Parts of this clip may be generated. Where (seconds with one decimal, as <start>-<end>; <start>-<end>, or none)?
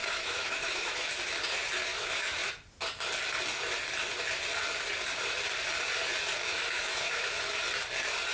0.0-1.1; 1.9-2.5; 6.4-7.4